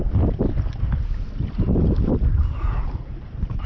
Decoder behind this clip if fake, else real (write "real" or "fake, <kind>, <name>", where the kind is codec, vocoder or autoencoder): real